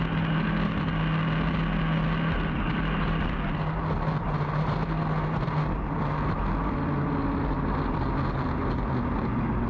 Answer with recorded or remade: recorded